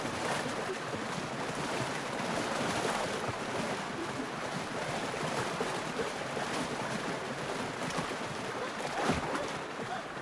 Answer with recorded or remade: remade